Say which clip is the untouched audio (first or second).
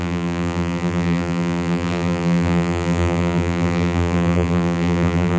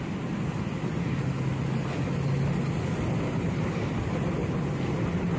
second